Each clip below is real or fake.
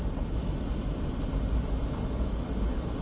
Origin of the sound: real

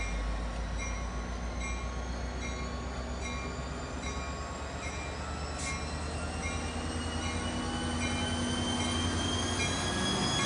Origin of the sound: real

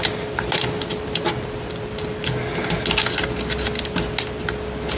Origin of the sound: real